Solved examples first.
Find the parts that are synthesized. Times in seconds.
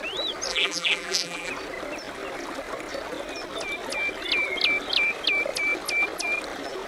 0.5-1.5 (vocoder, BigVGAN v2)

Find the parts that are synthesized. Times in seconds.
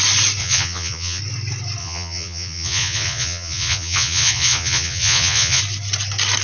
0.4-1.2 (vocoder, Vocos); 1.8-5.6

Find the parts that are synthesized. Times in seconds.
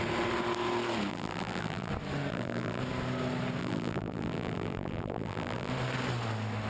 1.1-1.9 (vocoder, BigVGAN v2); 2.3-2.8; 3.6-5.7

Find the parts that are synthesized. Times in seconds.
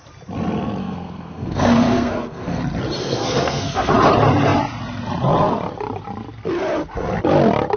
0.8-2.6 (codec, SNAC); 3.0-3.9